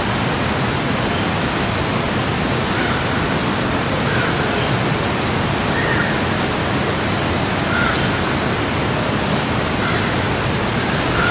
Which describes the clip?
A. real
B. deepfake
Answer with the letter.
A